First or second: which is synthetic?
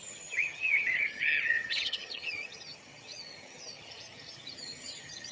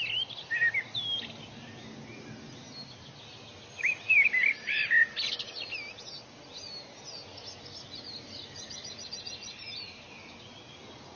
first